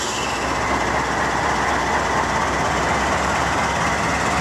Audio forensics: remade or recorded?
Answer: recorded